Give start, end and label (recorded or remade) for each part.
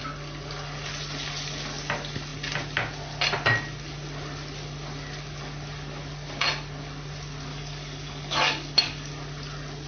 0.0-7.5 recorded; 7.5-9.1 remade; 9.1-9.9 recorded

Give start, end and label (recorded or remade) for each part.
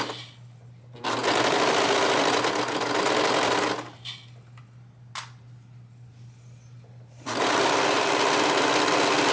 0.0-9.3 recorded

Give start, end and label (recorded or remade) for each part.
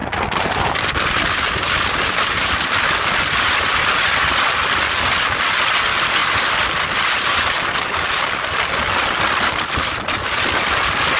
0.0-11.2 recorded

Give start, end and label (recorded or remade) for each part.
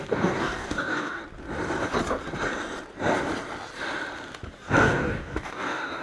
0.0-1.2 remade; 1.2-4.8 recorded; 4.8-6.0 remade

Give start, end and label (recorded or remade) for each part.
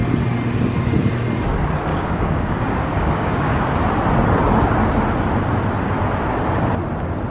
0.0-1.9 recorded; 1.9-3.7 remade; 3.7-7.3 recorded